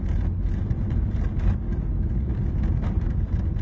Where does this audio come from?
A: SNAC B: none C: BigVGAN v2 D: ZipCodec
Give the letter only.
B